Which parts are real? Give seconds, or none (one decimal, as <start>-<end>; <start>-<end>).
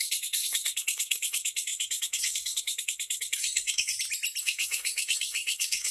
3.9-4.4